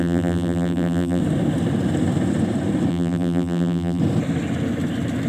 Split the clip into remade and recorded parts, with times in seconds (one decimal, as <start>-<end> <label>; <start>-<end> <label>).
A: 0.0-1.2 remade; 1.2-2.9 recorded; 2.9-4.0 remade; 4.0-5.3 recorded